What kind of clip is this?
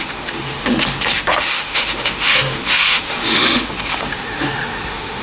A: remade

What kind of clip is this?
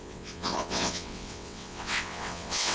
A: remade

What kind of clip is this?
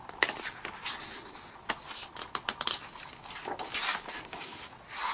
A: recorded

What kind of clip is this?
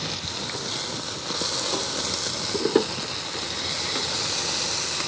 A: recorded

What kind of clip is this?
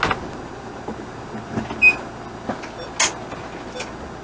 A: recorded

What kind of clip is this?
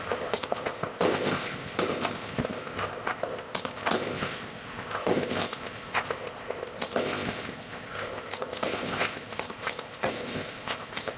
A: remade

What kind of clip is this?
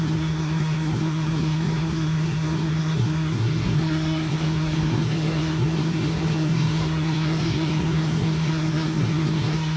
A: remade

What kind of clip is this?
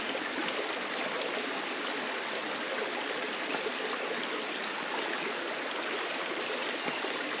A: recorded